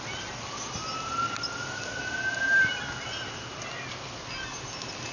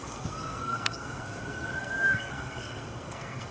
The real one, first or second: first